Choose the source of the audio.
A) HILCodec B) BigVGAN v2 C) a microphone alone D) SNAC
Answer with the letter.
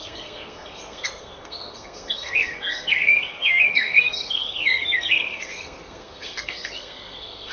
D